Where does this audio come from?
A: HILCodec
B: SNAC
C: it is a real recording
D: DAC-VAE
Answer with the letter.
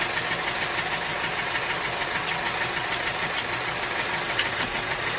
C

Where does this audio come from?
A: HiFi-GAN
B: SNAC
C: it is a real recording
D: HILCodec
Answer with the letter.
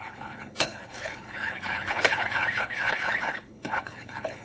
D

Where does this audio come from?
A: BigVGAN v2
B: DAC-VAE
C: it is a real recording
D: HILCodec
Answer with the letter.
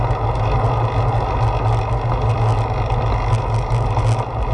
C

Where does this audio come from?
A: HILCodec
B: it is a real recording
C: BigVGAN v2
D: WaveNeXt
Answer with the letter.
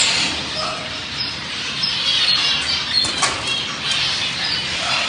B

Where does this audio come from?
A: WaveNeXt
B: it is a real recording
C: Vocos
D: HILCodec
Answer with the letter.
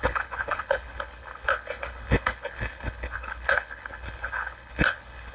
D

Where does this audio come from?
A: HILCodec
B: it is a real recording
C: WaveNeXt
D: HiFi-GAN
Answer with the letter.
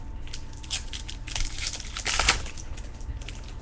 B